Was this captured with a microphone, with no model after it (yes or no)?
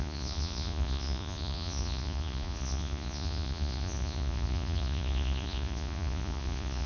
no